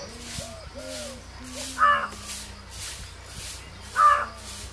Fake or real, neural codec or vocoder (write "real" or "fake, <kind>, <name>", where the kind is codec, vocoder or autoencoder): real